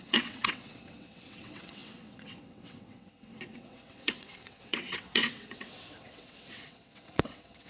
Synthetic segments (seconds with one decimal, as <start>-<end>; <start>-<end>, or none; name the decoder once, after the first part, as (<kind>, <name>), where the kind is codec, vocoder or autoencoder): 0.0-7.7 (vocoder, WaveNeXt)